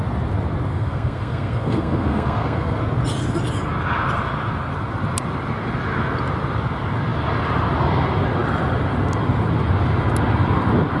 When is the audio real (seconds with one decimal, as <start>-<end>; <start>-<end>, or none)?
0.0-0.7; 2.8-11.0